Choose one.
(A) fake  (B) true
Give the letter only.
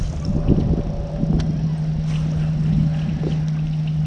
B